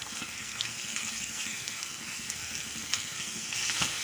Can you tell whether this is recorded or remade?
remade